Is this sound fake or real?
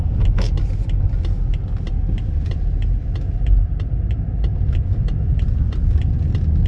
real